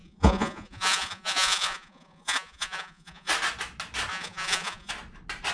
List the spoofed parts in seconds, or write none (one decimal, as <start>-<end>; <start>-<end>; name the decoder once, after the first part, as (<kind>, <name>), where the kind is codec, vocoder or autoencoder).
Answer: 0.0-3.3 (vocoder, Vocos); 4.1-4.9